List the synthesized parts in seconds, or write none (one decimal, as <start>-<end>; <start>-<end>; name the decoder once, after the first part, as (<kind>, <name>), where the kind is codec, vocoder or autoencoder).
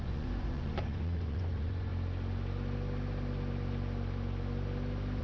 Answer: 0.0-1.9 (vocoder, Vocos)